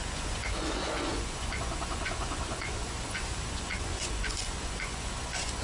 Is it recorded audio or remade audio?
remade